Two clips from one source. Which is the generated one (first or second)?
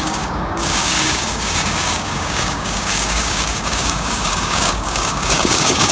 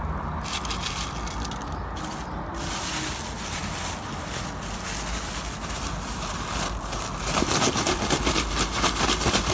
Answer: first